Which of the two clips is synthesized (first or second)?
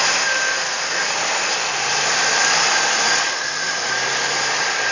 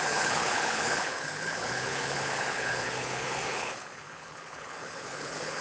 second